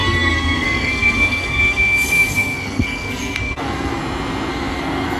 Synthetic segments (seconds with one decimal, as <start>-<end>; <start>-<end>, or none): 0.0-4.0; 4.5-5.2